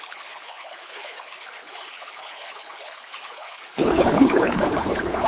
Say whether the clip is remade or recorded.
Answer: remade